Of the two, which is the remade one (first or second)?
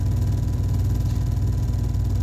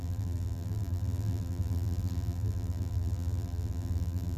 second